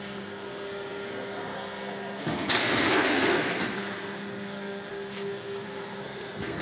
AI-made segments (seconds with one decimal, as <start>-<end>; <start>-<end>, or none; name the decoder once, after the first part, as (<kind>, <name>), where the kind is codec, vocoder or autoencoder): 0.0-6.6 (codec, SNAC)